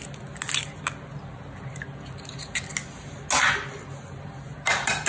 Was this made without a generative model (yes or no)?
yes